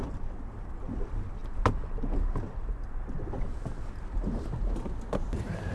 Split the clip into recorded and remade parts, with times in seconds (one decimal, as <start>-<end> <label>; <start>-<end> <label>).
0.0-5.7 recorded